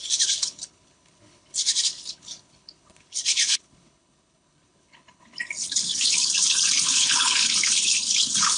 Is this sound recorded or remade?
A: remade